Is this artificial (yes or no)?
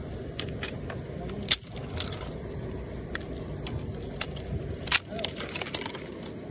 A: yes